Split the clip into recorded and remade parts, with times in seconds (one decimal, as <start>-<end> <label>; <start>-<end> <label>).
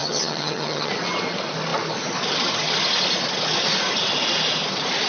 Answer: 0.0-0.9 remade; 0.9-5.1 recorded